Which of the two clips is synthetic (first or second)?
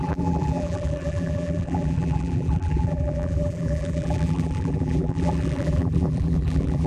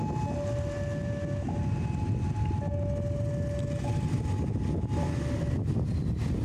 first